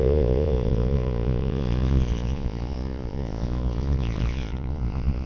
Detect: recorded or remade remade